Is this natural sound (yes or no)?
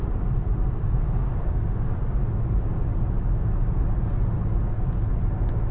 yes